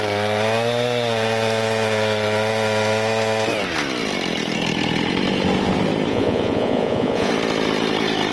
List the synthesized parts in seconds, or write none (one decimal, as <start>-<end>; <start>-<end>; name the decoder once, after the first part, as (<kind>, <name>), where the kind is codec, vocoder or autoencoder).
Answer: 6.1-7.3 (vocoder, Vocos)